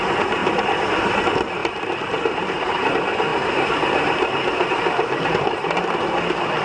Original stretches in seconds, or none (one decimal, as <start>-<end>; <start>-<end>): 0.0-0.4; 1.2-1.6; 2.9-3.3